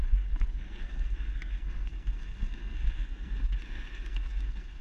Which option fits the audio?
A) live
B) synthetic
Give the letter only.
B